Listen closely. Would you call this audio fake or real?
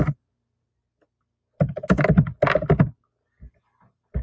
real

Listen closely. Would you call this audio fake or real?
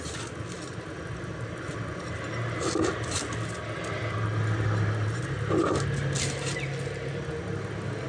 real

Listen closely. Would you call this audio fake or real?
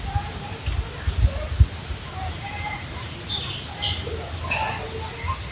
real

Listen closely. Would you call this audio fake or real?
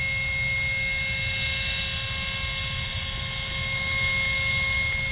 real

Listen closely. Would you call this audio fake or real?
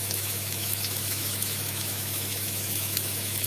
fake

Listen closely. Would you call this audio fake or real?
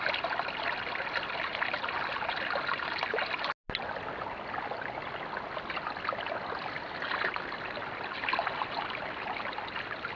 real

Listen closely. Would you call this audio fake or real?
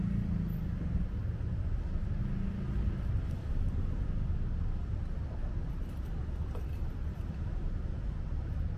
real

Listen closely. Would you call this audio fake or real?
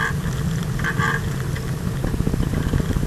real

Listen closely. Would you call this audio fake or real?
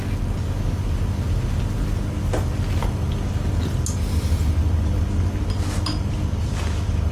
real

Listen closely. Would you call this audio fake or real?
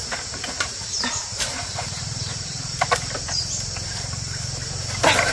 fake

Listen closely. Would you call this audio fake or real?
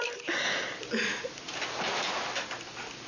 real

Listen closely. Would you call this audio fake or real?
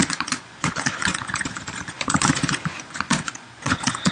fake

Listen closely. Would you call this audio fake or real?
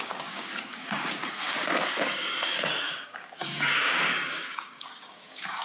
fake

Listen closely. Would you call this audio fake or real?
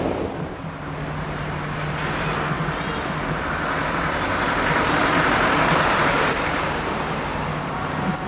real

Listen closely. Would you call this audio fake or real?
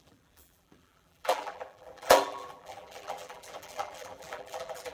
fake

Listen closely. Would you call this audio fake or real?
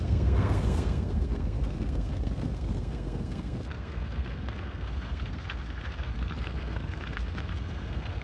fake